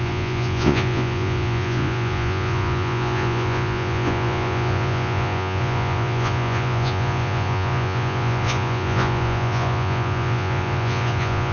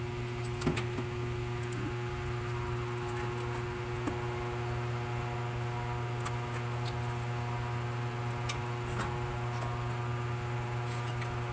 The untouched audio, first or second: second